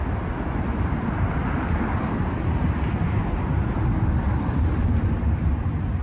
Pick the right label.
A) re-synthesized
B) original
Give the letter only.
B